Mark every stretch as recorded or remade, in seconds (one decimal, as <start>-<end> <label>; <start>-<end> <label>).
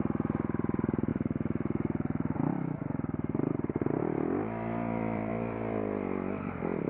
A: 0.0-6.9 remade